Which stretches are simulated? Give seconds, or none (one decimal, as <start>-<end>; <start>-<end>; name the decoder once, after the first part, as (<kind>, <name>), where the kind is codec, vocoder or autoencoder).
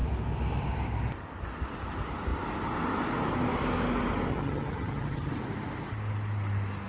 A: 4.3-5.3 (vocoder, HiFi-GAN)